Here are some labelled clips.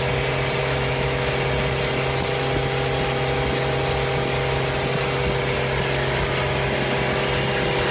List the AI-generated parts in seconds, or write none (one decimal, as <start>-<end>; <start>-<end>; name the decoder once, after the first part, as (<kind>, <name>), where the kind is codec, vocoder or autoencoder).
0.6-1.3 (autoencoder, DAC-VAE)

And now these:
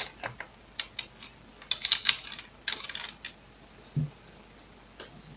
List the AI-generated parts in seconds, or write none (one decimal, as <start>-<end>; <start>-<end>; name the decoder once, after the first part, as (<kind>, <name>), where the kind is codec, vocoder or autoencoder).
none

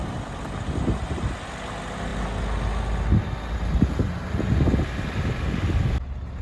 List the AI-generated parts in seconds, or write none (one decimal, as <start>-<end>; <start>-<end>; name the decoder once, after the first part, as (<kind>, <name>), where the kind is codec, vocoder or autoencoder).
none

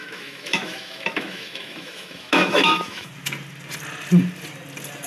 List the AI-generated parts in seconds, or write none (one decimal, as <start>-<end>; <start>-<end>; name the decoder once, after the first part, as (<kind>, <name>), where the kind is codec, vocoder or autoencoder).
0.0-3.1 (autoencoder, DAC-VAE)

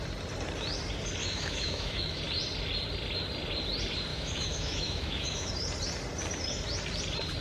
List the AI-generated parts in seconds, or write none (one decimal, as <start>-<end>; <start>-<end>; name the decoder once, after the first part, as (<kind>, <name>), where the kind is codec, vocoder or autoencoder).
1.2-2.2 (autoencoder, DAC-VAE); 4.1-5.5